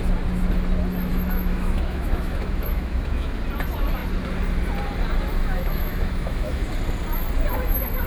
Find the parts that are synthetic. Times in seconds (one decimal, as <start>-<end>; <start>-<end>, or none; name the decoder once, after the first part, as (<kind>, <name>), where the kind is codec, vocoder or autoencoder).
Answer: 1.1-3.3 (autoencoder, DAC-VAE); 5.4-6.7